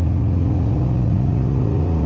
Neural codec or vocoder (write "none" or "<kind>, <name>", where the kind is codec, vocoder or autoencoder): vocoder, Vocos